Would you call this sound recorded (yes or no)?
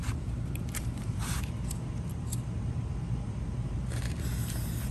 no